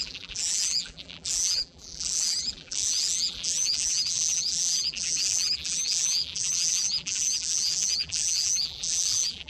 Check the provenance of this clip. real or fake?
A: fake